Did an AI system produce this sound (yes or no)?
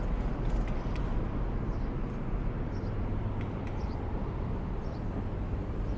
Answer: no